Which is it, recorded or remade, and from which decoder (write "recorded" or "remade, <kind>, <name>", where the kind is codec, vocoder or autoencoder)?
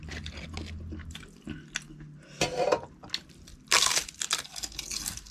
recorded